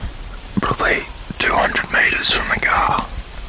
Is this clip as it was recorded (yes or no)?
no